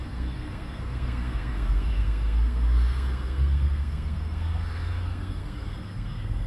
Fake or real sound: fake